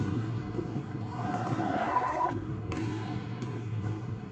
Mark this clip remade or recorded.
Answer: remade